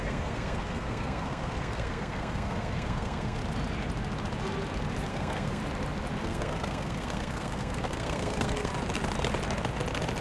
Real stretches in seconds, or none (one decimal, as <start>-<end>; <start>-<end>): 3.4-5.1; 5.6-6.2; 8.7-10.2